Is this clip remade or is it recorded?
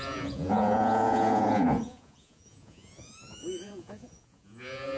remade